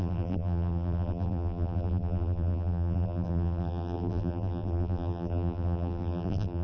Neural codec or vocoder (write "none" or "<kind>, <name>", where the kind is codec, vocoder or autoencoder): vocoder, BigVGAN v2